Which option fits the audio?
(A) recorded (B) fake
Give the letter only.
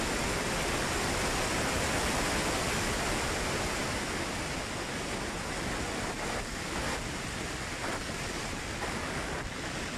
A